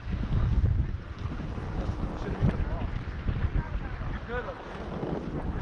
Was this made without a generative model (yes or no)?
yes